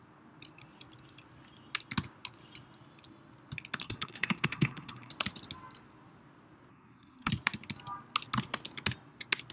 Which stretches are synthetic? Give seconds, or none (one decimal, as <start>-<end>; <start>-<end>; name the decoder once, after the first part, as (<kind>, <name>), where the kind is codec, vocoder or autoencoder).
3.8-5.1 (codec, SNAC); 6.7-7.3